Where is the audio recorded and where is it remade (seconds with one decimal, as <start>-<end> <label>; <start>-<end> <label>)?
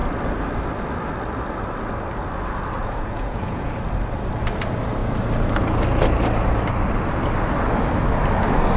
0.0-2.8 recorded; 2.8-3.7 remade; 3.7-8.8 recorded